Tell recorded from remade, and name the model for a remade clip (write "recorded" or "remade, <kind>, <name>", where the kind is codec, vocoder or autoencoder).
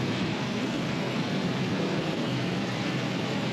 remade, codec, SNAC